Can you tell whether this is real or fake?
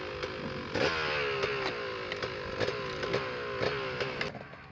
real